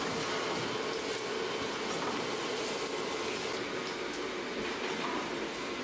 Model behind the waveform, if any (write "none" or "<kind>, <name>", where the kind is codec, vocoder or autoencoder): none